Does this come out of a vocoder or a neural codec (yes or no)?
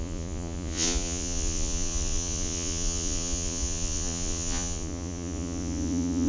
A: yes